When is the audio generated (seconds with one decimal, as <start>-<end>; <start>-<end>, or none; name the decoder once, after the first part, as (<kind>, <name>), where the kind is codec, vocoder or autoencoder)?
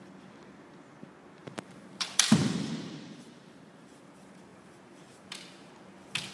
1.4-3.9 (vocoder, BigVGAN v2); 4.5-5.7